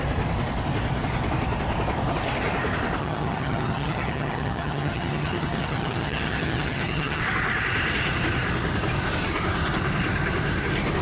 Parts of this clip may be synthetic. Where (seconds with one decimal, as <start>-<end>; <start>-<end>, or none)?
3.0-7.2